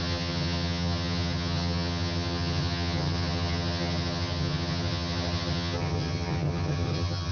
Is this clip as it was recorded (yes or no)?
no